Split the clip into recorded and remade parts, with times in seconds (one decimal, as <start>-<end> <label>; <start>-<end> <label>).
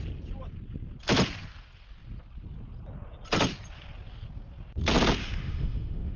0.0-5.2 recorded; 5.2-6.2 remade